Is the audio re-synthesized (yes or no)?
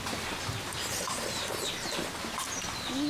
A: no